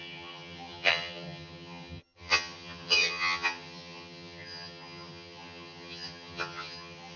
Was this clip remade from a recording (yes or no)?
yes